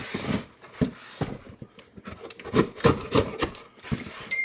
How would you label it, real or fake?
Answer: fake